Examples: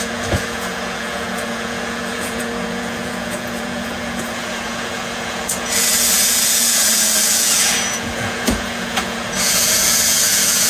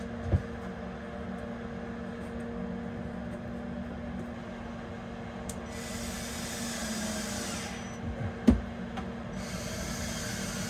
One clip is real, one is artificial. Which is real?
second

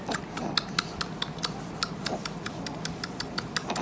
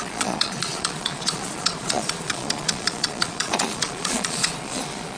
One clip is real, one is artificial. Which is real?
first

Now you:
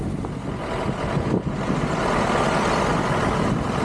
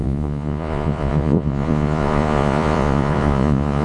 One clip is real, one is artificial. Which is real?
first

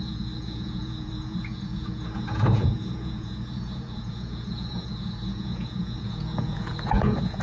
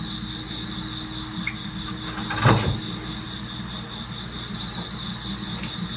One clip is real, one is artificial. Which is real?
second